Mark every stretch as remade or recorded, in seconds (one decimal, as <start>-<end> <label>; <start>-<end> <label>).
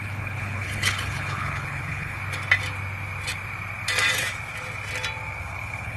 0.0-2.2 remade; 2.2-5.4 recorded; 5.4-6.0 remade